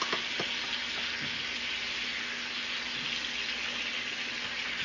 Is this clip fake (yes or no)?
no